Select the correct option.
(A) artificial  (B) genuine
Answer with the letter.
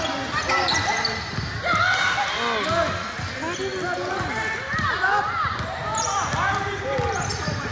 B